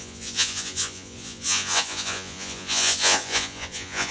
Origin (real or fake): fake